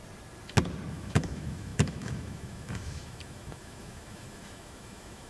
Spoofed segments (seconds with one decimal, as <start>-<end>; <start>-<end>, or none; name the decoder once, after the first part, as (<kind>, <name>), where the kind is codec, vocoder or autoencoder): 0.9-5.3 (autoencoder, DAC-VAE)